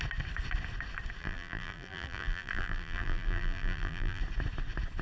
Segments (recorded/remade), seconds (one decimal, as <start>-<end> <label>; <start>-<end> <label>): 0.0-1.2 recorded; 1.2-4.2 remade; 4.2-5.0 recorded